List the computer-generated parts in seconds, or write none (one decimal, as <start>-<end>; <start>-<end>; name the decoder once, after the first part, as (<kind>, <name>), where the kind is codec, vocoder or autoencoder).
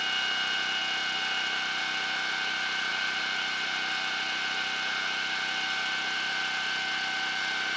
none